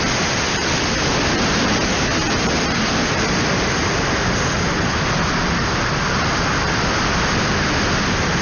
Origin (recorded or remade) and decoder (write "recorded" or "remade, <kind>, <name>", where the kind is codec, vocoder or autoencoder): recorded